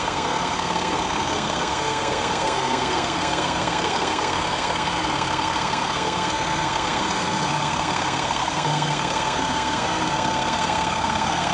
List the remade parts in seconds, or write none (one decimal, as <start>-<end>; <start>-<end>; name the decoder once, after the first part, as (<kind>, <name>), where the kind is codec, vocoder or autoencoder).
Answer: 0.0-11.5 (codec, SNAC)